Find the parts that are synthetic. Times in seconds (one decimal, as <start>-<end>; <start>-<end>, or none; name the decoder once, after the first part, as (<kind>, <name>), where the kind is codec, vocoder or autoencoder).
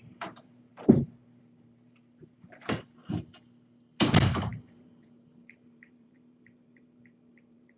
0.0-3.0 (vocoder, BigVGAN v2); 4.1-7.8